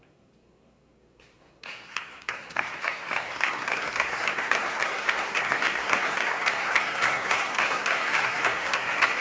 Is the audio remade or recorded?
remade